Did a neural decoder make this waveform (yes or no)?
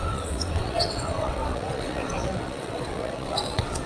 yes